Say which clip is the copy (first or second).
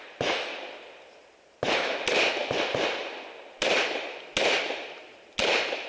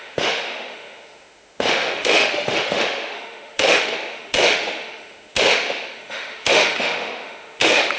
second